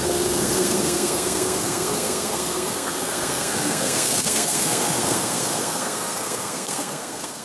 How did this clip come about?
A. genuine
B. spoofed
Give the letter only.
B